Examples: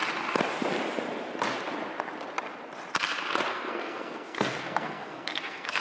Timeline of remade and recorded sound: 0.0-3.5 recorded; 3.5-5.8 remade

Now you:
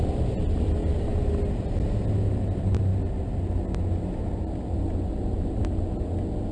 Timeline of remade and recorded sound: 0.0-6.5 recorded

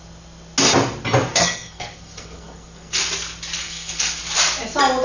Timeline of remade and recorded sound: 0.0-1.3 recorded; 1.3-3.0 remade; 3.0-3.6 recorded; 3.6-4.2 remade; 4.2-5.0 recorded

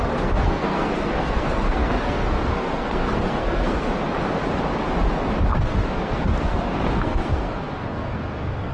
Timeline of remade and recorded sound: 0.0-3.9 remade; 3.9-5.5 recorded; 5.5-8.7 remade

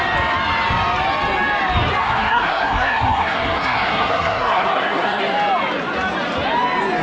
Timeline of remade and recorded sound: 0.0-2.0 recorded; 2.0-5.2 remade; 5.2-7.0 recorded